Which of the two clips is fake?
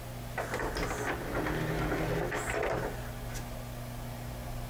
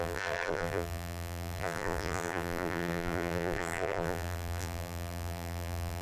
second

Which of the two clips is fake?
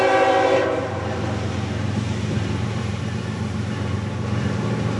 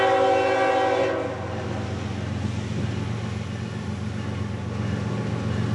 first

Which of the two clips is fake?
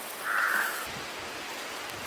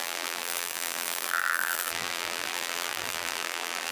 second